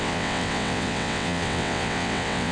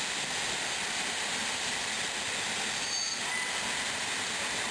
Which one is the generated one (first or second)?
first